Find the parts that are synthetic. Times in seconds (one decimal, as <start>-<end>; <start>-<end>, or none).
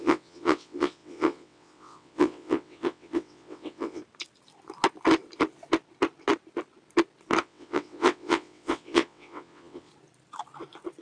0.0-4.0; 7.4-9.9